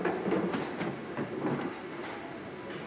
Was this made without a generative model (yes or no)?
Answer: yes